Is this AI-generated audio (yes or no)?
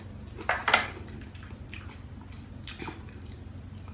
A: no